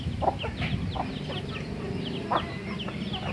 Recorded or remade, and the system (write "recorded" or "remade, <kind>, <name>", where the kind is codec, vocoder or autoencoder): recorded